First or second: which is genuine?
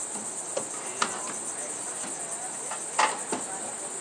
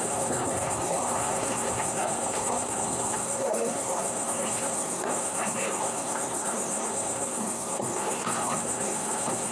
first